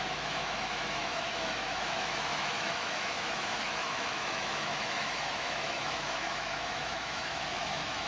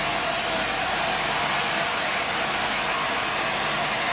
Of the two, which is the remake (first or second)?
first